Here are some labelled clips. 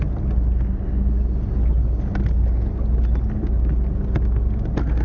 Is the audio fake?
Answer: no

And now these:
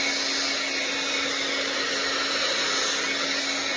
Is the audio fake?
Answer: no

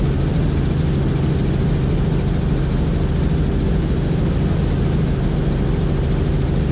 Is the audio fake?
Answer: no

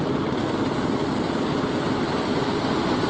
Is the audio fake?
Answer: no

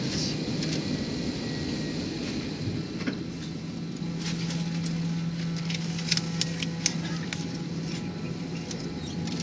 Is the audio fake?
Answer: no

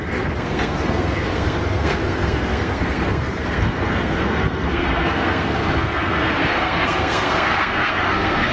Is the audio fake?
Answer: yes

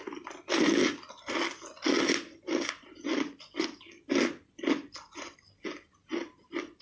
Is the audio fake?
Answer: no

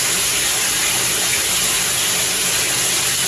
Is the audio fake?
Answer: no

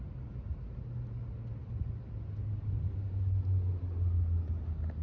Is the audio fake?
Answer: no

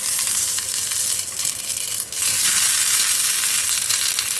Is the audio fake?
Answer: no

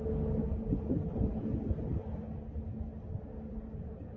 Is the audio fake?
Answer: no